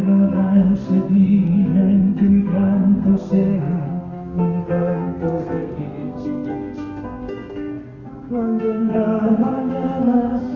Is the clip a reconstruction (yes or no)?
yes